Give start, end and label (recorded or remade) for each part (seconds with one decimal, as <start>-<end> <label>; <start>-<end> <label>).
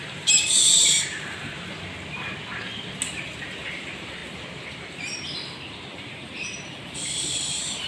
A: 0.0-1.8 remade; 1.8-3.8 recorded; 3.8-4.2 remade; 4.2-4.8 recorded; 4.8-7.9 remade